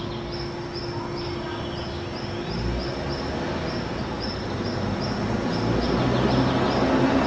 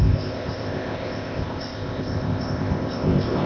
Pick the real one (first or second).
first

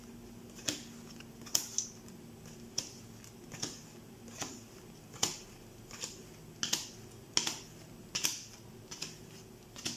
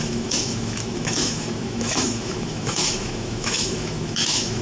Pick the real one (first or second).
first